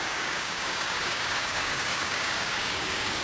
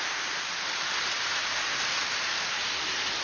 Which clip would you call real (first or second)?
second